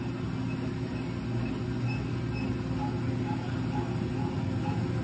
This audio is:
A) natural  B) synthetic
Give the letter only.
A